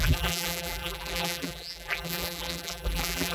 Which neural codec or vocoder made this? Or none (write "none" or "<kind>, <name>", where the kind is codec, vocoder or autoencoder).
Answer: vocoder, BigVGAN v2